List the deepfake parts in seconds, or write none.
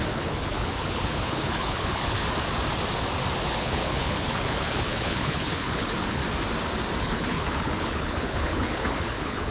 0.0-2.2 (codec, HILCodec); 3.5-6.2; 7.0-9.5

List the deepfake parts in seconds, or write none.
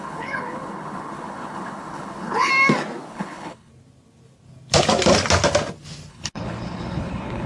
0.0-2.5 (codec, HILCodec); 3.1-3.7; 6.1-7.5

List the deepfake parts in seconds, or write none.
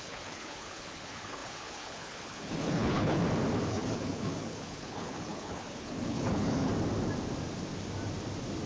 0.0-3.2 (codec, HILCodec); 3.7-6.7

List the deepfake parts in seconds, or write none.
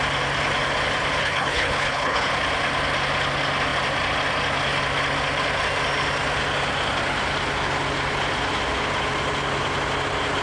1.2-2.3 (codec, HILCodec)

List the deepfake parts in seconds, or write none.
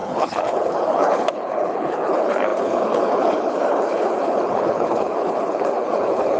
0.0-6.4 (codec, HILCodec)